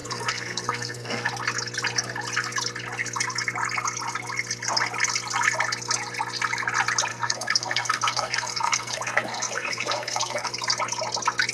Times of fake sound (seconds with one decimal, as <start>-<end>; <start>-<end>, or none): 0.0-1.3; 7.1-10.5